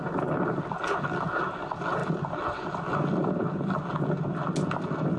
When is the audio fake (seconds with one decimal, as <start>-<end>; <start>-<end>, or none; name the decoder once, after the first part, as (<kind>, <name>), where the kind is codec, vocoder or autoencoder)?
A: 2.0-3.9 (vocoder, BigVGAN v2)